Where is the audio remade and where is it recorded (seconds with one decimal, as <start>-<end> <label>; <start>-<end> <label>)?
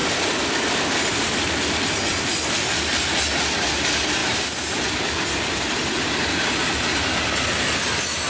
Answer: 0.0-2.7 remade; 2.7-4.2 recorded; 4.2-7.1 remade; 7.1-8.3 recorded